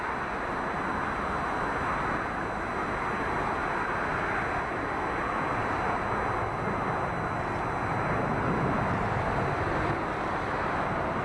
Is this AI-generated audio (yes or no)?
no